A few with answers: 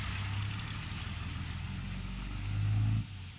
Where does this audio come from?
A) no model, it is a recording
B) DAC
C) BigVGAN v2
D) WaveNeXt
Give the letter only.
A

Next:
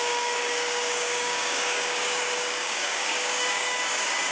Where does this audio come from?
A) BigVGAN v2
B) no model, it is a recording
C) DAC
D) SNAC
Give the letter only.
C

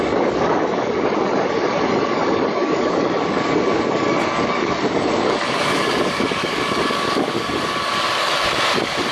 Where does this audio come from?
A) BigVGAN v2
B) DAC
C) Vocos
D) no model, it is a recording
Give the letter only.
B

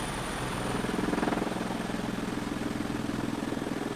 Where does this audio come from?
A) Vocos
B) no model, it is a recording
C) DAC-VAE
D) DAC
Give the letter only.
B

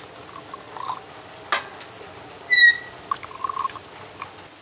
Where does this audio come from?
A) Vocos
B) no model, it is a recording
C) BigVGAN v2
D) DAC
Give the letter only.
B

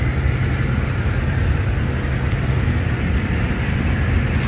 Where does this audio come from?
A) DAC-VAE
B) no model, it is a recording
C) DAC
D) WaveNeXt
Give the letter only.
B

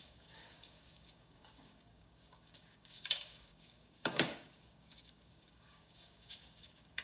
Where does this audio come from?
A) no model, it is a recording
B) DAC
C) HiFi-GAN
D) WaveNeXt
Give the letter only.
B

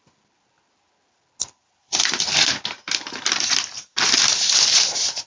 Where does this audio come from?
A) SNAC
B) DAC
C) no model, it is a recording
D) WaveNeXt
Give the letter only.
C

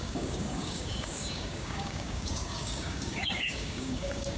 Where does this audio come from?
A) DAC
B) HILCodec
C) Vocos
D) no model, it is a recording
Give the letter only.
A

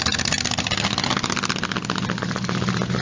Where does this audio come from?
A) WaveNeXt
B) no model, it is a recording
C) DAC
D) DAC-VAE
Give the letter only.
B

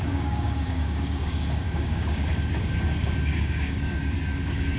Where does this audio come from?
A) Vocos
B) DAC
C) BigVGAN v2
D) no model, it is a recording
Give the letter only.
B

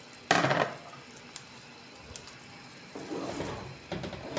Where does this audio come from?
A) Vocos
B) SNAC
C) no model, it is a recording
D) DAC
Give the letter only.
C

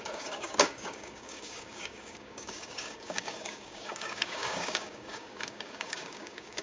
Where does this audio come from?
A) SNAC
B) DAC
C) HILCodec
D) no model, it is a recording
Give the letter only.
B